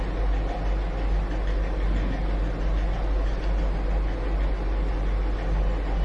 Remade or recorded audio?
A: recorded